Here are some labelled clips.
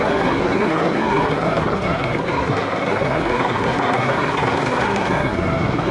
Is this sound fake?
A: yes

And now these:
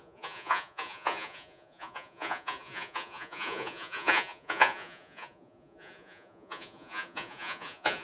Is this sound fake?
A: yes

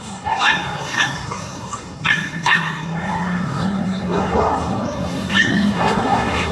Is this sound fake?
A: yes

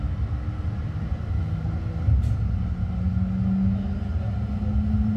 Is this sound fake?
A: no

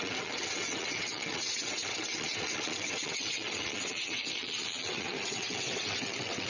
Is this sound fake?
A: yes